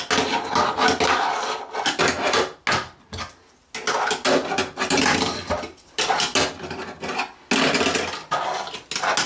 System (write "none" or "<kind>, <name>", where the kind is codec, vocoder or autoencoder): none